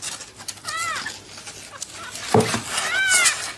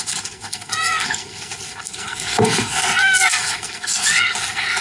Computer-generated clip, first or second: second